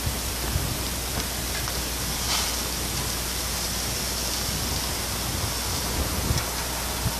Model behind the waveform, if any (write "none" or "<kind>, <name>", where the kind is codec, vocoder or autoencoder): none